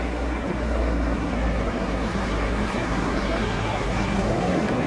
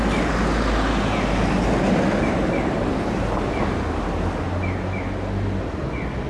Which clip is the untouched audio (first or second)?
second